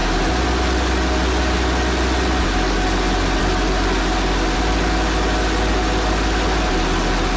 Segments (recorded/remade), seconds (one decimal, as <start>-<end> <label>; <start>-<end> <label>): 0.0-7.4 recorded